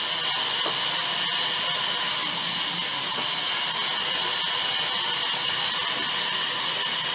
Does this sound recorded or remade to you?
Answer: recorded